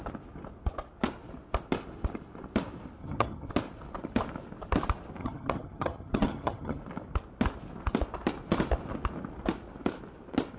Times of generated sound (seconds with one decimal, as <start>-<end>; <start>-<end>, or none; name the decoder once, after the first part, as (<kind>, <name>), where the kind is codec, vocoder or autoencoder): 3.0-3.5 (vocoder, HiFi-GAN); 5.2-6.8